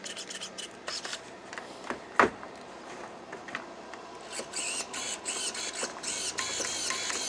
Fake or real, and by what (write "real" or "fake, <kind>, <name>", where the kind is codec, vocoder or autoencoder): real